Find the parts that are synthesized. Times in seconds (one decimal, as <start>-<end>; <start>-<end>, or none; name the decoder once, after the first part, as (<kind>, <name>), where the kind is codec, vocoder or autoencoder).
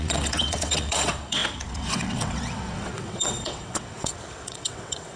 0.0-5.2 (vocoder, WaveNeXt)